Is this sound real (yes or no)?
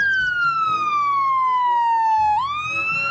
yes